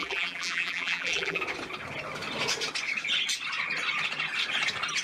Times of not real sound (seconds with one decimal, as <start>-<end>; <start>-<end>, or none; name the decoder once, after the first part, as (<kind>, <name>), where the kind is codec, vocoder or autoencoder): 0.0-1.4 (vocoder, BigVGAN v2)